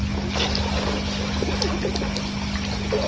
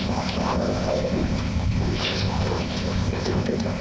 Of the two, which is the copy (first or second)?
second